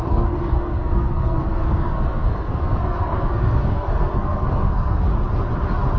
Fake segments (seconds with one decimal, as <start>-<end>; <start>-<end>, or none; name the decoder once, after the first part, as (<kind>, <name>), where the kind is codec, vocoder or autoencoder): 0.0-5.1 (codec, SNAC)